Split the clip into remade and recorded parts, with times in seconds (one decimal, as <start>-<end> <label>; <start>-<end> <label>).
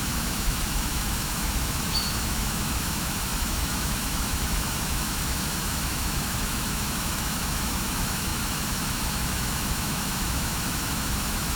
0.0-11.6 remade